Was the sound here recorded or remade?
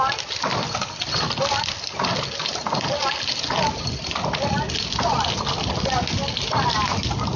recorded